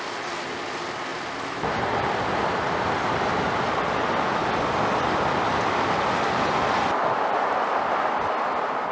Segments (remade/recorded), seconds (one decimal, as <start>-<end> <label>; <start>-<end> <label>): 0.0-8.9 recorded